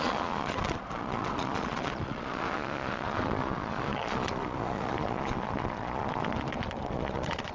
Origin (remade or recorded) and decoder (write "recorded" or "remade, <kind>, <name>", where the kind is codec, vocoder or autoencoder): remade, vocoder, Vocos